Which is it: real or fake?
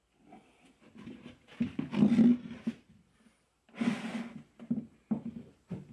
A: real